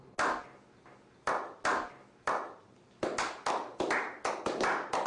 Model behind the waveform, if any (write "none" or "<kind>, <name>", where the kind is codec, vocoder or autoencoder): none